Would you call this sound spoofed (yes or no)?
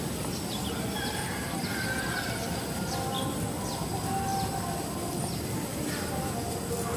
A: no